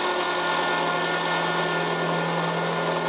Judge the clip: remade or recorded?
recorded